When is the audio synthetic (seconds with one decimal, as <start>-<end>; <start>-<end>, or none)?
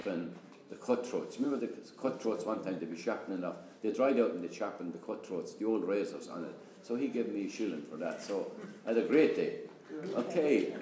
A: 0.0-1.6; 3.2-4.1